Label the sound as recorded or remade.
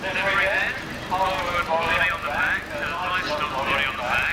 recorded